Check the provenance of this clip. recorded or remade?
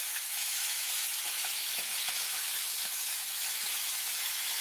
remade